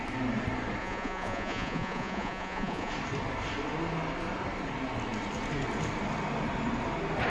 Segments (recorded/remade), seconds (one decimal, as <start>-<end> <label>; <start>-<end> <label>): 0.0-0.8 recorded; 0.8-2.9 remade; 2.9-7.3 recorded